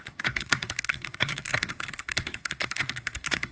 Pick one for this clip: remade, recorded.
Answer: remade